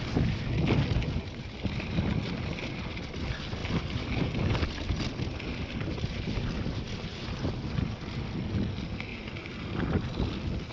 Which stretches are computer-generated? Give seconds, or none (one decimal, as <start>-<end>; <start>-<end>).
none

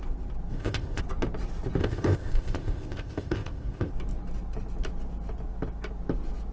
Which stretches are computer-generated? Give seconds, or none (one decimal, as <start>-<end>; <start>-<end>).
0.5-1.0; 1.8-3.9

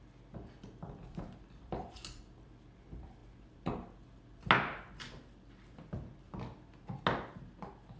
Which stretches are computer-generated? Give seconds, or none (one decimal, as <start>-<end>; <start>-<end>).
none

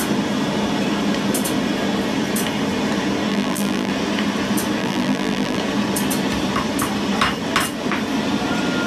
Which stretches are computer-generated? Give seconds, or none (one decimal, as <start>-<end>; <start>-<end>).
3.3-3.9; 4.8-5.6